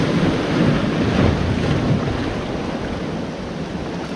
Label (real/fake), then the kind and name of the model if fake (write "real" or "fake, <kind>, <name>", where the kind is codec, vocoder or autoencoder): real